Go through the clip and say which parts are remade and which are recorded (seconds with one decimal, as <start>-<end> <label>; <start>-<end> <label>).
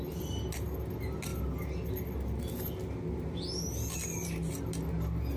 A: 0.0-5.4 recorded